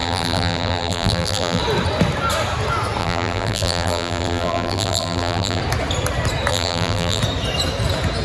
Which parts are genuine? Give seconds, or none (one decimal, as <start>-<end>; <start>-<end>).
1.6-3.0; 5.6-6.5; 7.2-8.2